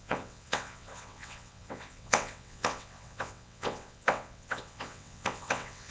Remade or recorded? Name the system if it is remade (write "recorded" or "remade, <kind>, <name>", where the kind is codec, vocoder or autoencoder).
remade, vocoder, WaveNeXt